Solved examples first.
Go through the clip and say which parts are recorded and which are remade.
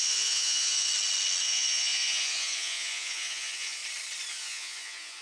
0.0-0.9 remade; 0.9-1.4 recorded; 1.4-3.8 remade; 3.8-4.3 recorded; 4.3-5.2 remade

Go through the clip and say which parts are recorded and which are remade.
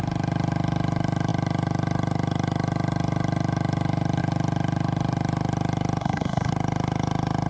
0.0-6.0 recorded; 6.0-6.5 remade; 6.5-7.5 recorded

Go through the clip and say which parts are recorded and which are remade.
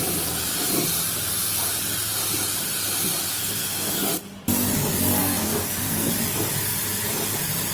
0.0-3.3 recorded; 3.3-4.1 remade; 4.1-5.2 recorded; 5.2-6.1 remade; 6.1-7.7 recorded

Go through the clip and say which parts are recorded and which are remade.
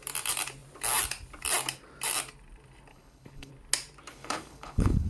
0.0-2.9 recorded; 2.9-3.5 remade; 3.5-4.1 recorded; 4.1-5.1 remade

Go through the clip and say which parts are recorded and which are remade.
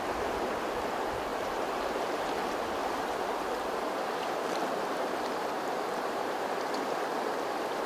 0.0-1.3 recorded; 1.3-2.2 remade; 2.2-2.8 recorded; 2.8-6.6 remade; 6.6-7.9 recorded